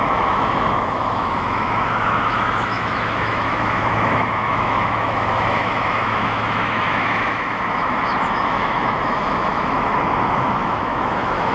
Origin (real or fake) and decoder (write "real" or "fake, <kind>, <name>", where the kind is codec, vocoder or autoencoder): fake, autoencoder, DAC-VAE